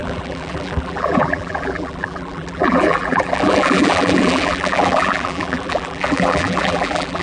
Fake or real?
fake